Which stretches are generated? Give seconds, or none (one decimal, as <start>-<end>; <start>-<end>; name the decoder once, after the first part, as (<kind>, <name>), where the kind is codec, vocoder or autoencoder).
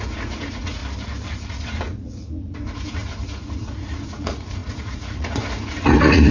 0.0-0.8 (vocoder, Vocos); 1.3-6.3